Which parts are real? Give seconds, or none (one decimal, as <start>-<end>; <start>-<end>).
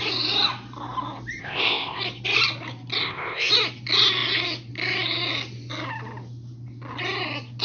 0.0-1.4; 2.0-3.0; 3.5-7.6